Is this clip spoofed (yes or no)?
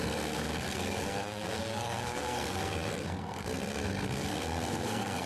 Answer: yes